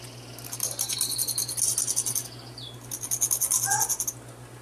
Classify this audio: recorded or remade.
recorded